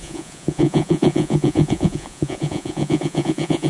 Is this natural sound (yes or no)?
no